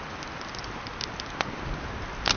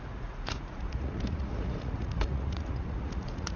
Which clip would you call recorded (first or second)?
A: first